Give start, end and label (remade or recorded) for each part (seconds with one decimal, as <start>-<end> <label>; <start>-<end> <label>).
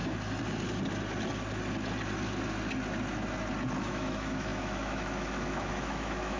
0.0-3.8 recorded; 3.8-6.4 remade